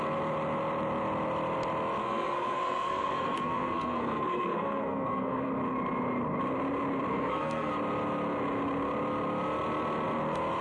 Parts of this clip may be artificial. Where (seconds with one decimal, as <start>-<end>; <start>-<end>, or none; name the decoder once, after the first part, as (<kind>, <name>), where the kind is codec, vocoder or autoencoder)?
2.0-5.5 (codec, SNAC); 7.1-7.7